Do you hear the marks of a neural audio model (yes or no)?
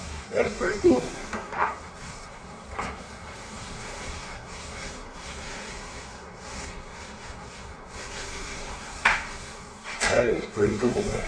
yes